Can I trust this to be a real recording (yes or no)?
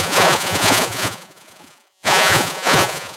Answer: no